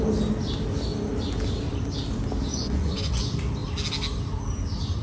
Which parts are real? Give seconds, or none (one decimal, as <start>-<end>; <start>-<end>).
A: 0.0-2.5; 3.2-5.0